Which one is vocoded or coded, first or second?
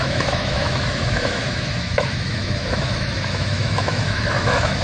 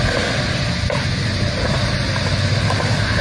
first